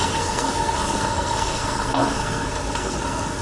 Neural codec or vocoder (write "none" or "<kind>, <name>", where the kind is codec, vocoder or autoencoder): codec, SNAC